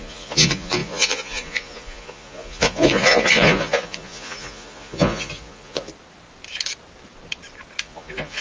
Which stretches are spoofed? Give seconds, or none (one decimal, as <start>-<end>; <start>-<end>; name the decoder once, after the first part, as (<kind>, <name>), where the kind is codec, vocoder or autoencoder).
0.0-5.9 (vocoder, Vocos); 7.8-8.4